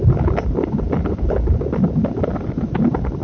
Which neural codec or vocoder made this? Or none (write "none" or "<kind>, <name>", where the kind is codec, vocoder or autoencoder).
none